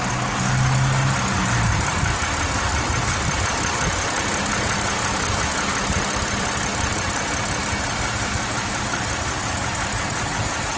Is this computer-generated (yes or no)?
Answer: no